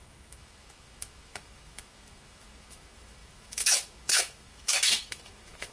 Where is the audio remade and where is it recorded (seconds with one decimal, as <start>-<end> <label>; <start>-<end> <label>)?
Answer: 0.0-5.7 remade